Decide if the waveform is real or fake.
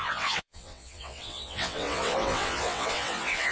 fake